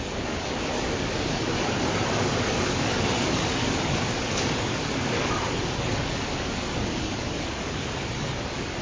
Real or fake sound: fake